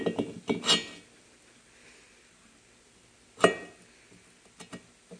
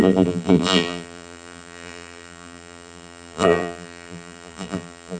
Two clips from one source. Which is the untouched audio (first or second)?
first